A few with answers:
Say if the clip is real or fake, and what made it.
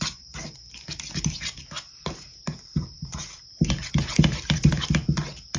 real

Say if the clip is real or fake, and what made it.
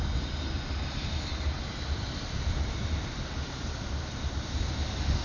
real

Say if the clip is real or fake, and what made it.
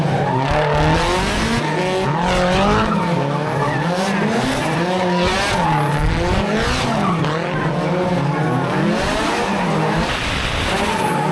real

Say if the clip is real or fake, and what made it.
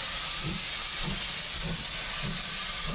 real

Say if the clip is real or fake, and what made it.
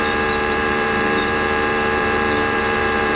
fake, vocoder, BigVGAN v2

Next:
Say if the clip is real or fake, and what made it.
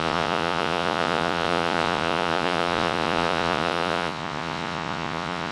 fake, vocoder, Vocos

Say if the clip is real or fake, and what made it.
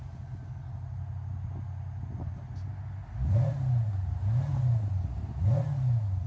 real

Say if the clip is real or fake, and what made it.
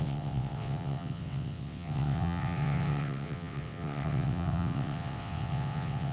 fake, vocoder, WaveNeXt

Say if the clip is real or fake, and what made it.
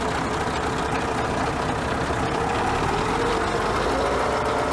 real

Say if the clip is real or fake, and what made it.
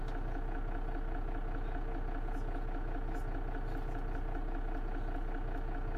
real